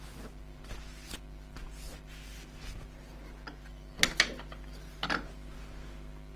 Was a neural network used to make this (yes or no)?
no